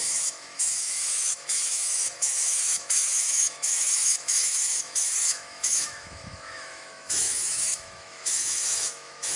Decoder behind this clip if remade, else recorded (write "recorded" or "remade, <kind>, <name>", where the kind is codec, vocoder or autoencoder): remade, autoencoder, DAC-VAE